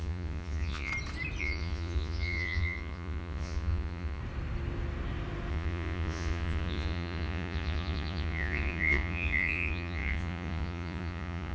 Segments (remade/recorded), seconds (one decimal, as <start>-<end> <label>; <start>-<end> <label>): 0.0-0.9 remade; 0.9-1.4 recorded; 1.4-4.2 remade; 4.2-5.5 recorded; 5.5-11.5 remade